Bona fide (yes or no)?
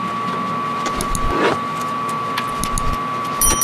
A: yes